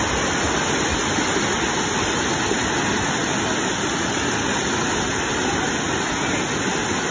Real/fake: real